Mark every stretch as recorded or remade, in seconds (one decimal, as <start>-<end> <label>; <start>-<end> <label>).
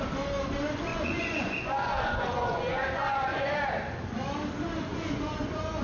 0.0-0.9 recorded; 0.9-3.5 remade; 3.5-4.9 recorded; 4.9-5.8 remade